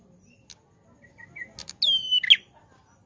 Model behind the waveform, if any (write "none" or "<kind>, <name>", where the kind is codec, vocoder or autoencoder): none